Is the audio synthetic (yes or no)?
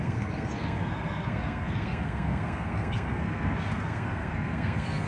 yes